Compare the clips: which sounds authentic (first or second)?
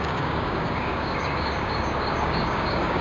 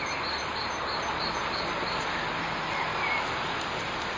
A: second